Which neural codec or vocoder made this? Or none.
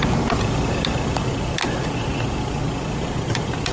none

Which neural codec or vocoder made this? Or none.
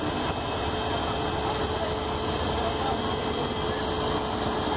none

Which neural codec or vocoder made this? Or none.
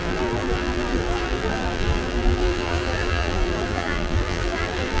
vocoder, BigVGAN v2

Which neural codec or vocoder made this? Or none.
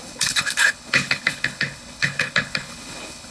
codec, HILCodec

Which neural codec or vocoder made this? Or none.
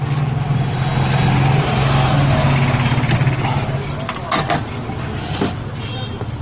none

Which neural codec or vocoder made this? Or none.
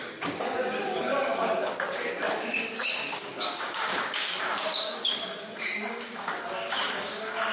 codec, DAC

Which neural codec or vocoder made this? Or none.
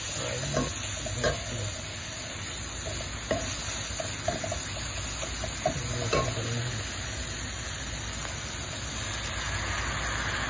none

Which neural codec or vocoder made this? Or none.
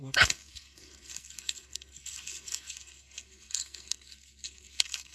codec, SNAC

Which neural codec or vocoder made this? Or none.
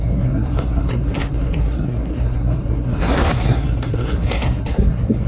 codec, SNAC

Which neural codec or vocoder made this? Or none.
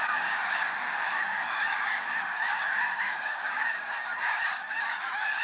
codec, DAC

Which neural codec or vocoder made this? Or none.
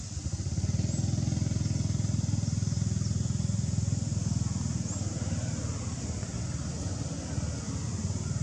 none